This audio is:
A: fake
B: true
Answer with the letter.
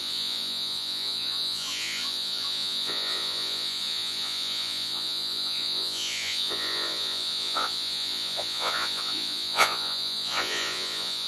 A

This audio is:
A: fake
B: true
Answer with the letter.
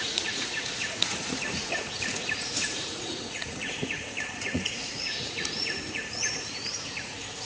A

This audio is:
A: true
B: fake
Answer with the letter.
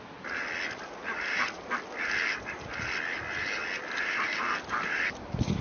A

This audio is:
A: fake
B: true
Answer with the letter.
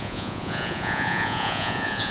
A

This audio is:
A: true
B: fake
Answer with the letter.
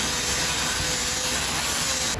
A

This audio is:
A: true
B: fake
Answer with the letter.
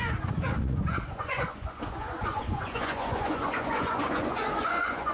B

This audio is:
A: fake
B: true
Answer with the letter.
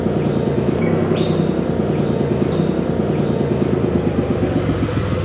B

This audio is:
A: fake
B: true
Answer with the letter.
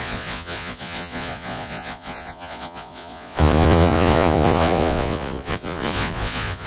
A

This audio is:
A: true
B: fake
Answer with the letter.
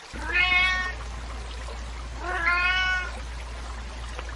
A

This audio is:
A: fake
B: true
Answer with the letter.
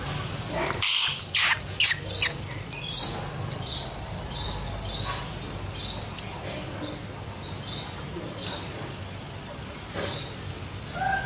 B